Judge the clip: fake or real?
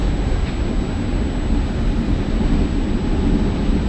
real